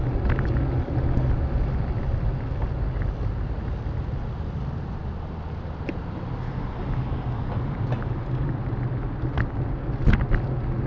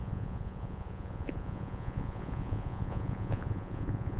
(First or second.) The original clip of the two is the first